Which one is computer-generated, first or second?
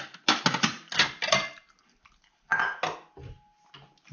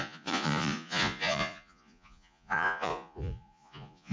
second